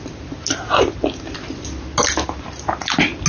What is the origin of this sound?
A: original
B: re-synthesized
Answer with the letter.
A